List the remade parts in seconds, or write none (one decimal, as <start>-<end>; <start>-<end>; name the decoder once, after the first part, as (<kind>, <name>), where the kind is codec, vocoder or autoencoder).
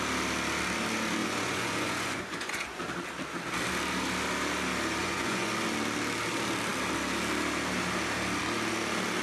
1.2-2.8 (vocoder, Vocos); 5.0-5.5